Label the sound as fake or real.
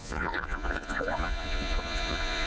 fake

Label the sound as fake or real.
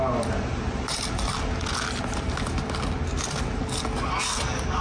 real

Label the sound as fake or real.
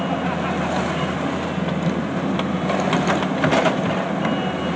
real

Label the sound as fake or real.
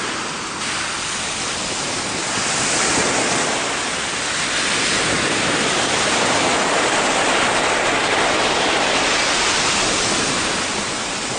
real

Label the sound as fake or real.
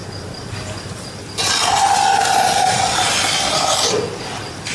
real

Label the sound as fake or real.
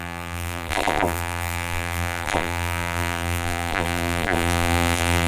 fake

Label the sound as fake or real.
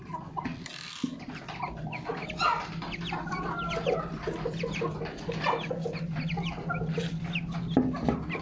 real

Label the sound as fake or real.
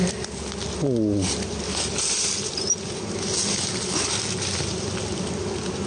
real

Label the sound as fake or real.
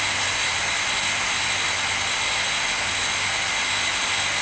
real